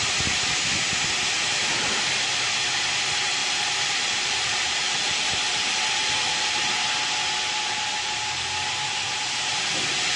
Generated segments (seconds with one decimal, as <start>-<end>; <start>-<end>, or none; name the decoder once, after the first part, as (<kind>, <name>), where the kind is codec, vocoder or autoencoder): 3.4-6.5 (vocoder, BigVGAN v2)